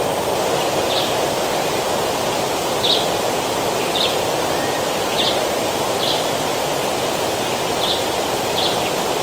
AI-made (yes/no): no